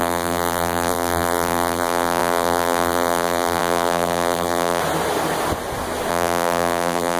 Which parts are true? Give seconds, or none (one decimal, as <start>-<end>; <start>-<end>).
4.8-6.1